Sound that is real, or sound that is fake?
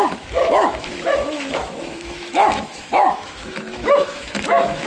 fake